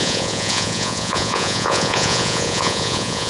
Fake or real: fake